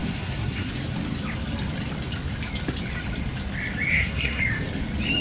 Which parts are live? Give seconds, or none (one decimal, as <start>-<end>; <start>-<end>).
0.7-3.9; 4.4-5.2